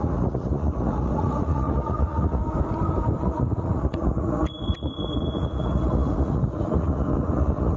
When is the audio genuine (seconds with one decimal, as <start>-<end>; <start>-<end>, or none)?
2.4-3.2